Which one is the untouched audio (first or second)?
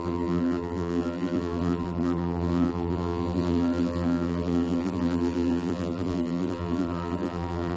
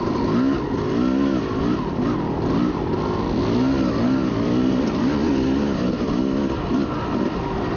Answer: second